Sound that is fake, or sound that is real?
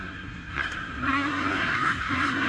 fake